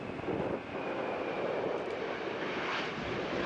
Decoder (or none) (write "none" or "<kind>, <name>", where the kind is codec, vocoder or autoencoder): none